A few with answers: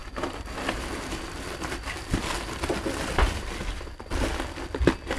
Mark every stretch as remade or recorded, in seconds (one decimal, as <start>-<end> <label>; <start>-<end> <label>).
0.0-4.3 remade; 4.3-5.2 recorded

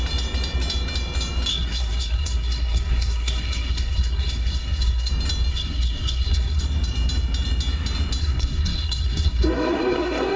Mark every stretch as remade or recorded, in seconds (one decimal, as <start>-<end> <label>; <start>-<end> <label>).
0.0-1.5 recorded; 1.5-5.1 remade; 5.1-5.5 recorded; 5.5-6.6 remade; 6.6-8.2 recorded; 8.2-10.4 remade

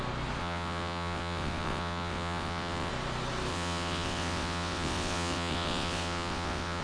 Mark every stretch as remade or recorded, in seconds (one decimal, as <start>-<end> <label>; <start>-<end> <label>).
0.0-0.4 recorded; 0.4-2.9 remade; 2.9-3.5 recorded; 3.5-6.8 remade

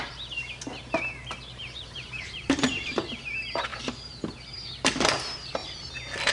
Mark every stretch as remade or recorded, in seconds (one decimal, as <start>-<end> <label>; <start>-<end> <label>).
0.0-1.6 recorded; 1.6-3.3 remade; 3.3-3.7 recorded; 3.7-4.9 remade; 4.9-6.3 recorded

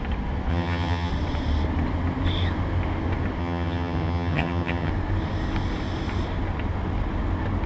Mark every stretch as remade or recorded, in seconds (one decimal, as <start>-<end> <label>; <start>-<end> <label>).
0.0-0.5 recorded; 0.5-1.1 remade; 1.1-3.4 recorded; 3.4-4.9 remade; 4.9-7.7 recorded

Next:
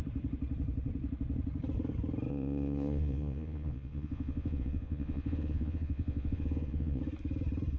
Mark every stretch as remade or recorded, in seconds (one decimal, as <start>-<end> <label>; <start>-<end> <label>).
0.0-2.3 recorded; 2.3-7.0 remade; 7.0-7.8 recorded

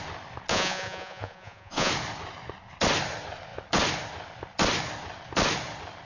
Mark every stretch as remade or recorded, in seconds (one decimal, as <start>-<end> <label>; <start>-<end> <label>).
0.0-0.5 recorded; 0.5-1.9 remade; 1.9-6.1 recorded